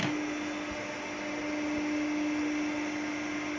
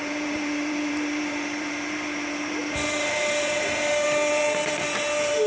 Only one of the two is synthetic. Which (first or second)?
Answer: second